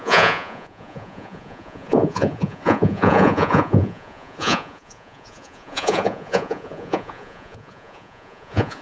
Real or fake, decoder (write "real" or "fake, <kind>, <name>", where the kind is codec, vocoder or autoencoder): fake, vocoder, Vocos